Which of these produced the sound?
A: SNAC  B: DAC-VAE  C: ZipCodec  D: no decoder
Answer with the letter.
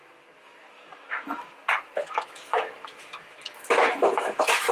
B